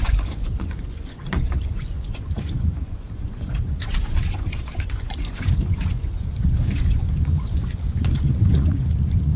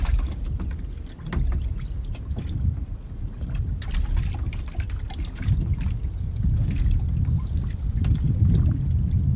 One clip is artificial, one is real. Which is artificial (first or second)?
first